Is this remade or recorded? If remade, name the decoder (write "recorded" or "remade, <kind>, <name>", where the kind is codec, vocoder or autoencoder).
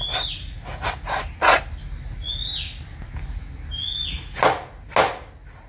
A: recorded